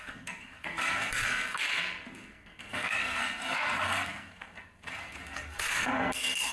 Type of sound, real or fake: fake